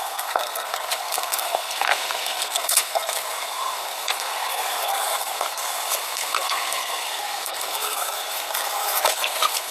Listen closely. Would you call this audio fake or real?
fake